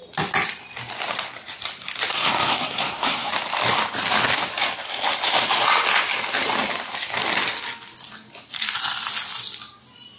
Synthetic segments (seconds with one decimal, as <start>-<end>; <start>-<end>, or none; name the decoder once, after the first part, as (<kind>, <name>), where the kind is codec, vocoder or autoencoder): 2.1-3.3 (codec, SNAC)